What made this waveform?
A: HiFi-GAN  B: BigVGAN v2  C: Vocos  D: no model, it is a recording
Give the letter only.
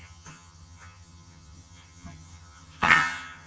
A